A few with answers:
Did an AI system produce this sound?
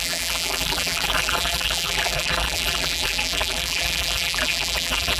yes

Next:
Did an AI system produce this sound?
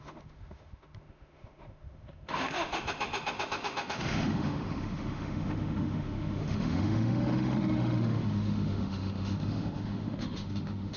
yes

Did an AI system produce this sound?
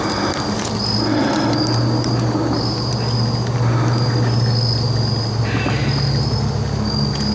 no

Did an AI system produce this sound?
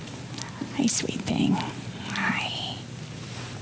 no